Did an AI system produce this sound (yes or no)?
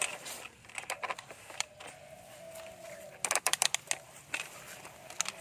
no